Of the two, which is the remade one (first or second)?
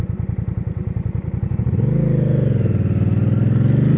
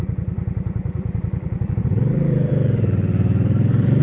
second